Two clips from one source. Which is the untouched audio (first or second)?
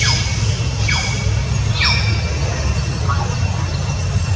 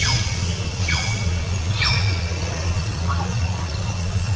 first